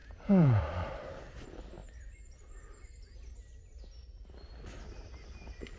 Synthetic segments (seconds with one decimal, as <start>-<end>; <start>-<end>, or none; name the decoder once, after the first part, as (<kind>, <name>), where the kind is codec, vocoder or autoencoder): 0.0-0.6 (vocoder, Vocos)